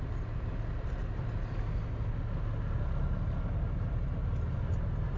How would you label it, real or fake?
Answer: real